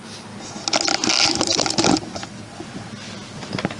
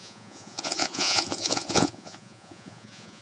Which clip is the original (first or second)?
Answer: first